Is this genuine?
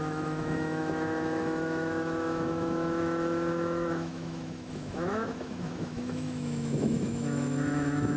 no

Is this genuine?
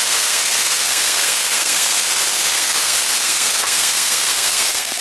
no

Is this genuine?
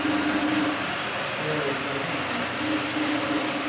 yes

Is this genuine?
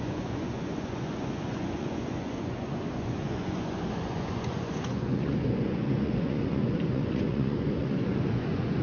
no